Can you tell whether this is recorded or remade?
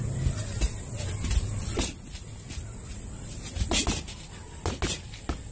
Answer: recorded